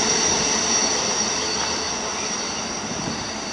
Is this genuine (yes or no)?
yes